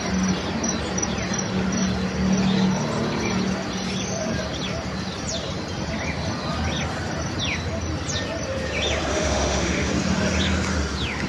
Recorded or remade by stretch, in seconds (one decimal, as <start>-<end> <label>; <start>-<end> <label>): 0.0-9.1 recorded; 9.1-9.9 remade; 9.9-11.3 recorded